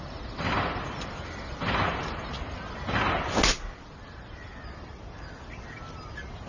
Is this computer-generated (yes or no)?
no